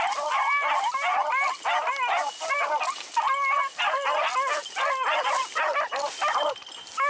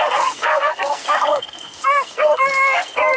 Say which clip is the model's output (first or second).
second